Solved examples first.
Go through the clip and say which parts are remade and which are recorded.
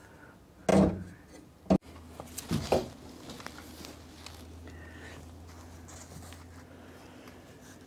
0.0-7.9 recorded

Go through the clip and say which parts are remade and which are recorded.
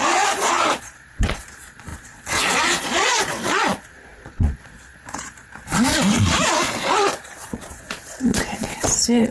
0.0-9.3 remade